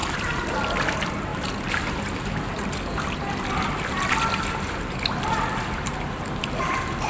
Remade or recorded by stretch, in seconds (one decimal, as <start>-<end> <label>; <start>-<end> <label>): 0.0-7.1 recorded